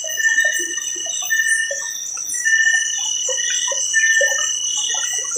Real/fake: real